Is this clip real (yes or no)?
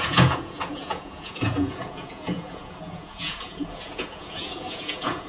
no